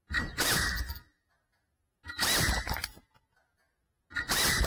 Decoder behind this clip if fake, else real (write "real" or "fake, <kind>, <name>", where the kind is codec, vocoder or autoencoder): real